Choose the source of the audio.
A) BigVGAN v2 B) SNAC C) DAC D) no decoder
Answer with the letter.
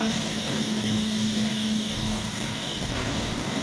C